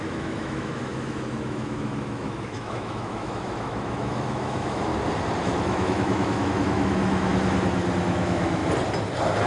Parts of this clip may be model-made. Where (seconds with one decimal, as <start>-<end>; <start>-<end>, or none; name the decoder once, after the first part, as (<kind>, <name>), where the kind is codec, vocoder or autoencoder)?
0.0-4.9 (autoencoder, DAC-VAE); 5.4-7.3; 8.0-8.6